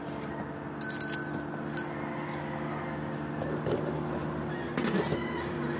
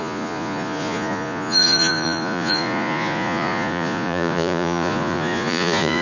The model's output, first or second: second